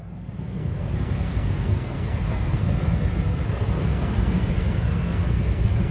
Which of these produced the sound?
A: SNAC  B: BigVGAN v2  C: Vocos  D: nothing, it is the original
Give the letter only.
A